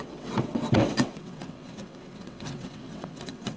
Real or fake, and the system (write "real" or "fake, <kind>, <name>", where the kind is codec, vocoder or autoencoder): fake, vocoder, WaveNeXt